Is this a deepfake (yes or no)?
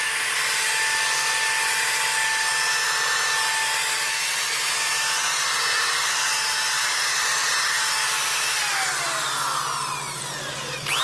no